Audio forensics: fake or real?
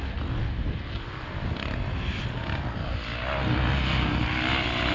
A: real